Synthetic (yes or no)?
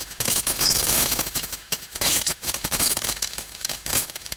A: yes